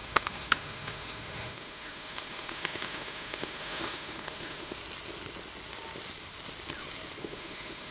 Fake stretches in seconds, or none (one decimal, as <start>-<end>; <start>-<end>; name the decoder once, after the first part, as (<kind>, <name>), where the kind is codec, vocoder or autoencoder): 0.0-4.8 (autoencoder, DAC-VAE); 7.2-7.9